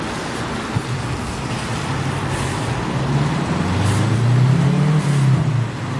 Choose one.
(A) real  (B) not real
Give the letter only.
A